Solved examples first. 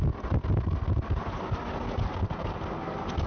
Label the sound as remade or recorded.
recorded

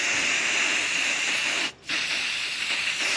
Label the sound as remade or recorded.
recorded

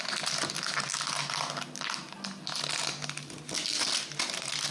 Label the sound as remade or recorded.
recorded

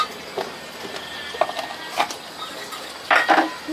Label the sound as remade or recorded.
recorded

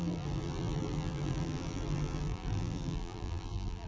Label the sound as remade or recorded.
remade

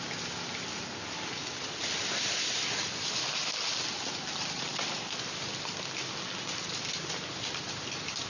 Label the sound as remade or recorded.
recorded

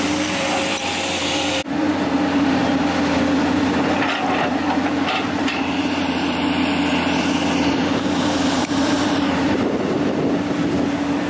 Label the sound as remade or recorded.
remade